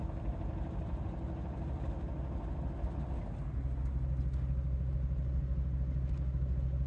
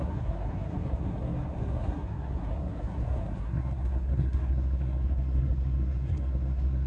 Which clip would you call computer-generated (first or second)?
second